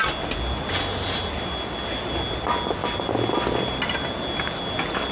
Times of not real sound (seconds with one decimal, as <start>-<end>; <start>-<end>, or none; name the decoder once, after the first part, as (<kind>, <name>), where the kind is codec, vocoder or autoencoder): none